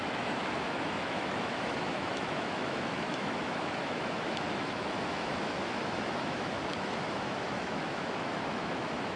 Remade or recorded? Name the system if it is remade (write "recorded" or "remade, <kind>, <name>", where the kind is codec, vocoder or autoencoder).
remade, autoencoder, DAC-VAE